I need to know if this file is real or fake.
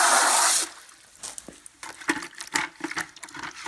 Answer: real